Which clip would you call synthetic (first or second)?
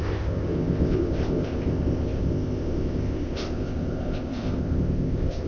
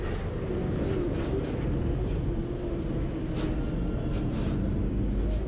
first